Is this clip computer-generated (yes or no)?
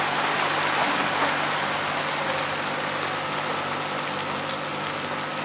no